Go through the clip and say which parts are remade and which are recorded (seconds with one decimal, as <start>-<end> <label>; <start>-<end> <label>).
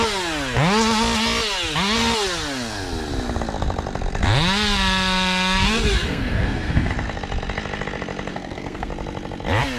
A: 0.0-5.6 recorded; 5.6-6.9 remade; 6.9-8.3 recorded; 8.3-8.9 remade; 8.9-9.8 recorded